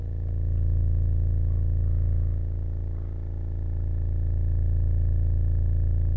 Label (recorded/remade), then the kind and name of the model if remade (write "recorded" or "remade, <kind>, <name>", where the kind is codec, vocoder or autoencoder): recorded